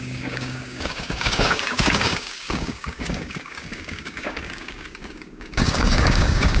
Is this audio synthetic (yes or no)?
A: yes